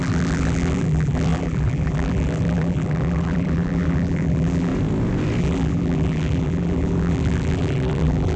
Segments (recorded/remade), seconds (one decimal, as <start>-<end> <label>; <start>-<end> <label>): 0.0-4.7 remade; 4.7-5.4 recorded; 5.4-8.4 remade